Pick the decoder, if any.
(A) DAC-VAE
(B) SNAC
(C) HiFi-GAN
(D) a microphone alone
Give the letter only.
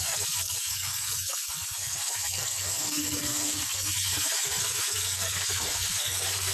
B